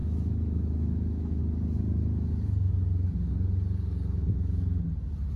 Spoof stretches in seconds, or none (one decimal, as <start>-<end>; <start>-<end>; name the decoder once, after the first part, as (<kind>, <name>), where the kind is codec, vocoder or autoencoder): 0.0-1.4 (autoencoder, DAC-VAE)